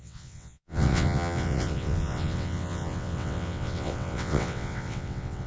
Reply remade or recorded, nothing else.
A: remade